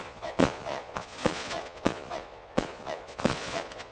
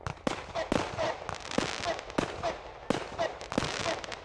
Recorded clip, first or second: second